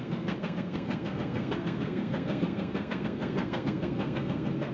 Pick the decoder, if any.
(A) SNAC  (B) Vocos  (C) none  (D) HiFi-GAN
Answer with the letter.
A